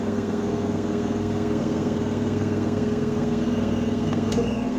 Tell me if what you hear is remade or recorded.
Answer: remade